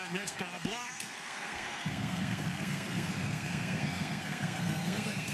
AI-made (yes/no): yes